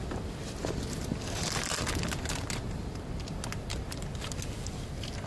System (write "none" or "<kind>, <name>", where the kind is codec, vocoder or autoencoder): none